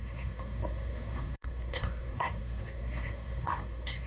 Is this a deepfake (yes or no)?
yes